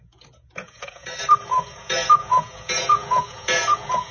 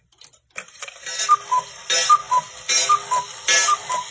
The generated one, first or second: first